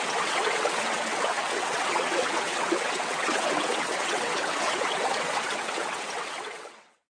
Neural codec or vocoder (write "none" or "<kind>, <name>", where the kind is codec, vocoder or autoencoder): vocoder, WaveNeXt